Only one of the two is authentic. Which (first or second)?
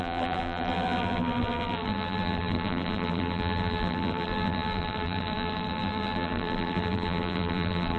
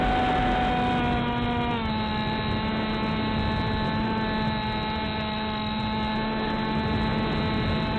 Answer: second